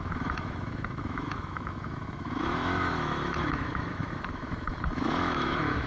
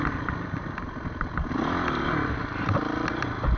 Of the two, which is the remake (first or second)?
first